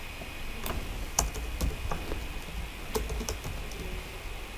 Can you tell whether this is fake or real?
real